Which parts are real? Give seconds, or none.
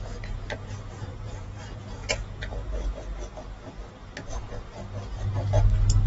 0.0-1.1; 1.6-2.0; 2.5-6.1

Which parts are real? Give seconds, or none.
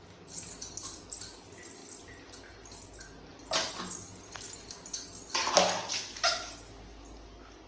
0.0-7.7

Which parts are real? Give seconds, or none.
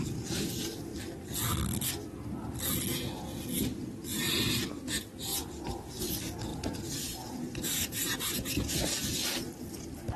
0.0-5.3; 6.1-6.5; 8.8-10.2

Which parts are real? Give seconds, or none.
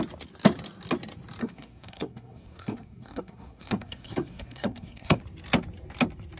0.0-1.4; 5.2-6.4